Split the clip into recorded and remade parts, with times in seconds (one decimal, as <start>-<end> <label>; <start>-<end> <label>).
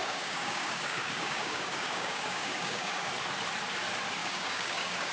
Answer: 0.0-3.1 remade; 3.1-4.2 recorded; 4.2-5.1 remade